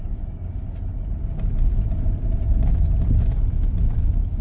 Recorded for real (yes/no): yes